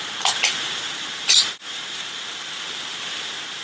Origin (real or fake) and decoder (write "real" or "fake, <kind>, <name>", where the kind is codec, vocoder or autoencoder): fake, vocoder, BigVGAN v2